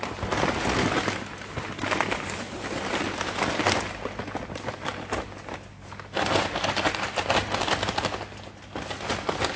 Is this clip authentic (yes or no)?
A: yes